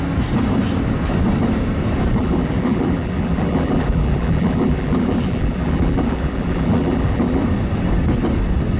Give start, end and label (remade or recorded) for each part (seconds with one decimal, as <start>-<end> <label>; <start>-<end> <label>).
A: 0.0-2.2 recorded; 2.2-7.4 remade; 7.4-8.8 recorded